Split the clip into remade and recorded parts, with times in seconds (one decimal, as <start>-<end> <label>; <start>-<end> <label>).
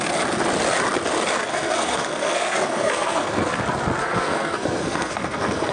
0.0-1.5 recorded; 1.5-3.6 remade; 3.6-4.0 recorded; 4.0-5.7 remade